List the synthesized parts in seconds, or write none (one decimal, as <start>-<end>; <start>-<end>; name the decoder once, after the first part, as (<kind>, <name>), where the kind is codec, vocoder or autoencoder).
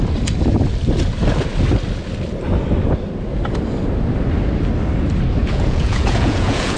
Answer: 5.4-6.8 (vocoder, Vocos)